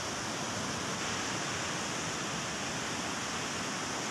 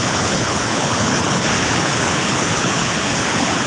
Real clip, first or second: first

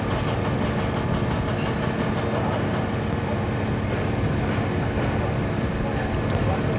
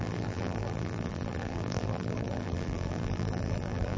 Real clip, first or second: first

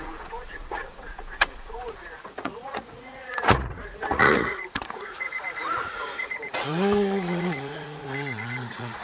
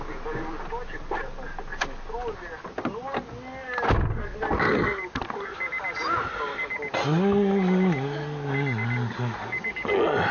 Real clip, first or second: second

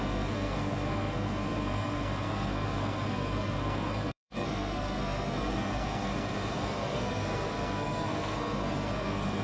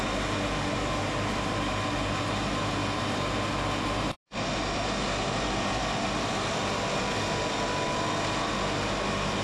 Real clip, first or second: second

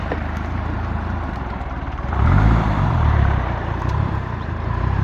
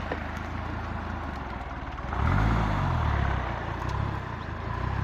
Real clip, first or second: second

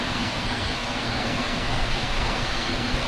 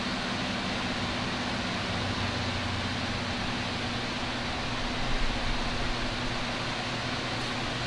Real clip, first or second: second